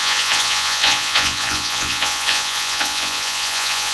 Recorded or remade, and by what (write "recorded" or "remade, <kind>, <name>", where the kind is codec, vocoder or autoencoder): remade, vocoder, Vocos